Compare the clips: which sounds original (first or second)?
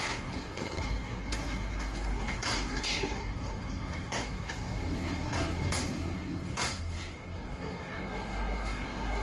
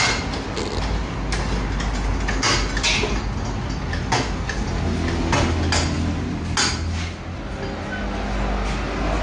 second